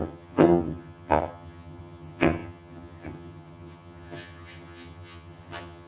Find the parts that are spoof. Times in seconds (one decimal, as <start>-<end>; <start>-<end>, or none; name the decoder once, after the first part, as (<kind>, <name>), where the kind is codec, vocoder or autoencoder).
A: 0.0-5.9 (vocoder, HiFi-GAN)